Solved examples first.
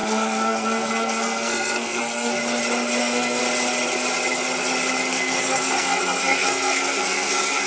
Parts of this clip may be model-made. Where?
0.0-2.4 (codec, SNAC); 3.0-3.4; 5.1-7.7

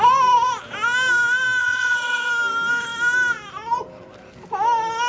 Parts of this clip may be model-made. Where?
1.6-2.3 (vocoder, HiFi-GAN)